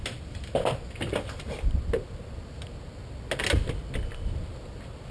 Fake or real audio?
real